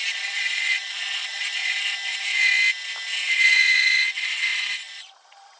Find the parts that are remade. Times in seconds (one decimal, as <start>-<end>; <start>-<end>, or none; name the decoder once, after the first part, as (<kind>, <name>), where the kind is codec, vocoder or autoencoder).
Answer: 0.0-1.6 (vocoder, Vocos); 3.3-5.6